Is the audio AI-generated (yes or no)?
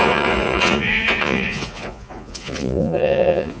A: yes